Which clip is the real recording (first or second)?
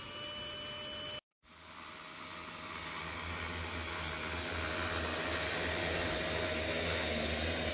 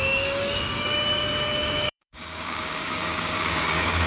first